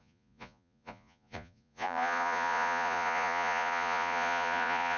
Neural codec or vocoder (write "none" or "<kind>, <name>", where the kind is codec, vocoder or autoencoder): vocoder, Vocos